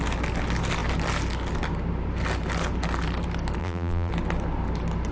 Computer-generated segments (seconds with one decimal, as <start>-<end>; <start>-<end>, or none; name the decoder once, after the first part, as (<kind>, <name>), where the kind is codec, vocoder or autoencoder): 3.6-4.1 (vocoder, BigVGAN v2)